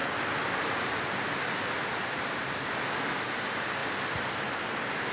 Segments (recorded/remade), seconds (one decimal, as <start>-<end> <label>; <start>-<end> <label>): 0.0-5.1 recorded